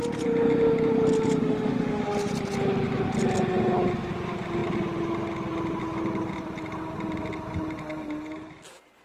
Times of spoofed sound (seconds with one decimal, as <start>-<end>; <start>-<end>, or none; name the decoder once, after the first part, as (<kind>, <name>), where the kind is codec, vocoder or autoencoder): 1.4-2.0 (autoencoder, DAC-VAE)